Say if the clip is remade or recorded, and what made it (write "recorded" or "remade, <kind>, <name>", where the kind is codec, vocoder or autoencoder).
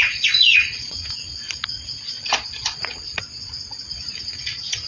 remade, vocoder, Vocos